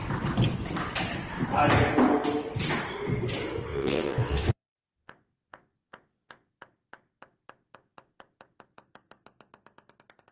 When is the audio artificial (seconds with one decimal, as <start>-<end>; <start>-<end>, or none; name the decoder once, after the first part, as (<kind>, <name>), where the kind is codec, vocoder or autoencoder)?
3.7-6.5 (vocoder, WaveNeXt)

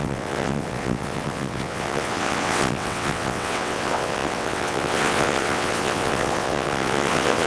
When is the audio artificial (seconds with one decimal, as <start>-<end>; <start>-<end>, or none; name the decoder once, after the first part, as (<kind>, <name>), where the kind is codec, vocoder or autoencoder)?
0.0-7.5 (vocoder, WaveNeXt)

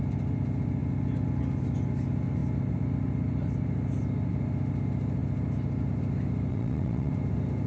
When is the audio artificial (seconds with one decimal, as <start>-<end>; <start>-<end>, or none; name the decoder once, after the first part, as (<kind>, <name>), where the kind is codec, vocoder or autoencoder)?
6.5-7.1 (vocoder, WaveNeXt)

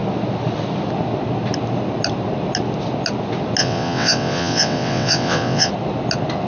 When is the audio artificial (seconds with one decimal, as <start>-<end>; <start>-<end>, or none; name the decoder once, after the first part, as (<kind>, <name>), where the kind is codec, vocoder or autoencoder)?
3.6-5.7 (vocoder, WaveNeXt)

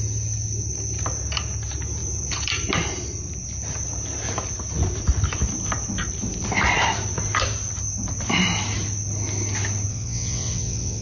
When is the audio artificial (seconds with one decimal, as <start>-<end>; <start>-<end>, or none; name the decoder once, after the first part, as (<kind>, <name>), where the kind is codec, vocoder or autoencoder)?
9.9-11.0 (vocoder, WaveNeXt)

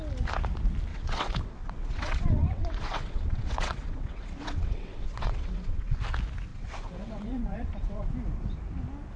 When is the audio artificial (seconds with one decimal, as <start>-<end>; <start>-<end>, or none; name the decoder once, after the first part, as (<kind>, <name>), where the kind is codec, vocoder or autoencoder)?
0.9-6.0 (vocoder, WaveNeXt); 6.5-8.1